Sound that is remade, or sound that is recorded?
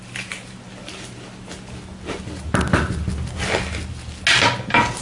recorded